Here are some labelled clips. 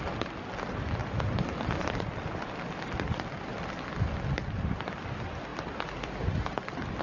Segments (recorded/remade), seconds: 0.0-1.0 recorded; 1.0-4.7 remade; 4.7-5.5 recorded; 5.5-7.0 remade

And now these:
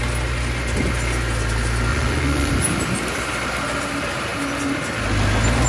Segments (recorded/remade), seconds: 0.0-1.9 recorded; 1.9-2.5 remade; 2.5-5.7 recorded

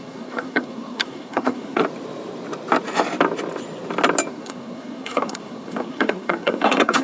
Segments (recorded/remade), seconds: 0.0-1.8 remade; 1.8-4.3 recorded; 4.3-7.0 remade

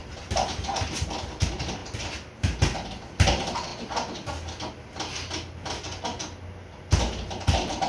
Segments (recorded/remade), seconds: 0.0-7.9 recorded